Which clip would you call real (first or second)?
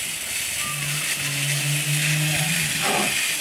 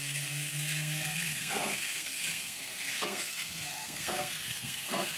first